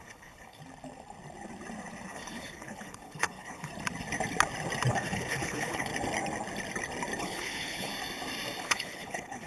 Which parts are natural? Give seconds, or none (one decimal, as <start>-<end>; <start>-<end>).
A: 0.6-2.1; 3.7-4.9; 5.9-7.2; 7.9-8.6